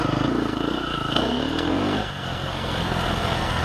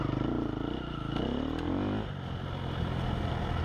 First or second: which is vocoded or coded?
first